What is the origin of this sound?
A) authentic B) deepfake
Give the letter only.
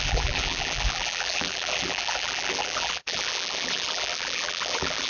B